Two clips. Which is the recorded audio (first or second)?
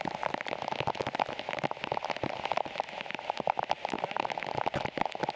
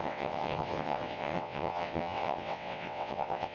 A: first